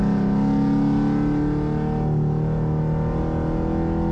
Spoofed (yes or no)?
no